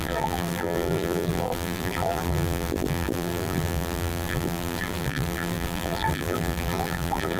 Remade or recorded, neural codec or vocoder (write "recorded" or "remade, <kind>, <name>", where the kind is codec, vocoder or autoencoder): remade, vocoder, BigVGAN v2